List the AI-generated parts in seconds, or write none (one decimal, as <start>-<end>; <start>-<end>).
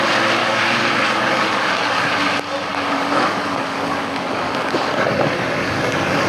0.4-2.1; 2.7-6.3